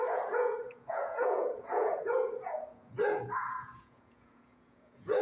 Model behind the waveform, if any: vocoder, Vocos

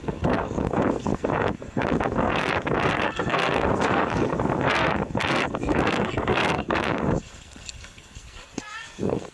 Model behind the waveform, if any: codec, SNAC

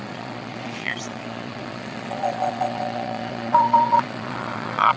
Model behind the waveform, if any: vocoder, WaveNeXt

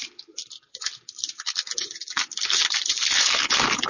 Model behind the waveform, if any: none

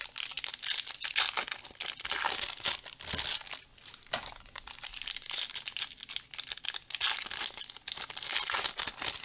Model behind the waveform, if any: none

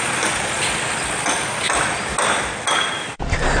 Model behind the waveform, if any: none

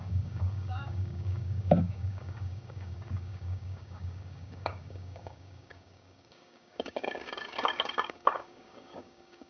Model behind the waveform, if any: codec, DAC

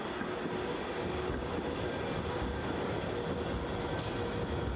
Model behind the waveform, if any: none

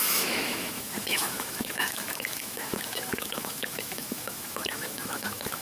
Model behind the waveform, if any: autoencoder, DAC-VAE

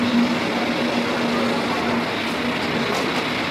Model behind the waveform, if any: none